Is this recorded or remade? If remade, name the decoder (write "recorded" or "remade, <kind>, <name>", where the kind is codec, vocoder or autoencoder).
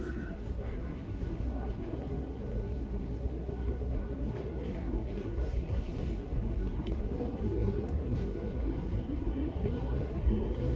remade, codec, SNAC